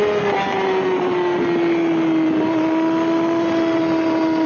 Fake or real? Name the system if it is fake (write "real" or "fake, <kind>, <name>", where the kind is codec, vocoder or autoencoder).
real